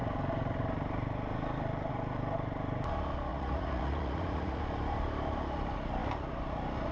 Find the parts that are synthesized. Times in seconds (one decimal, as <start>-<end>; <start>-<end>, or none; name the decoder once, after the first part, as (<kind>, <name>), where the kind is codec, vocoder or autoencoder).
3.3-4.6 (vocoder, Vocos)